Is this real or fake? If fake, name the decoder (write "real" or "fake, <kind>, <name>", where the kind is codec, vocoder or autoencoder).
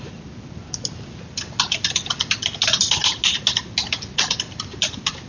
real